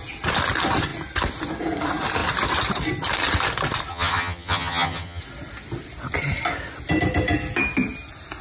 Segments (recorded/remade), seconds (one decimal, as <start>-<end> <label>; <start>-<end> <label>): 0.0-3.9 recorded; 3.9-5.2 remade; 5.2-8.4 recorded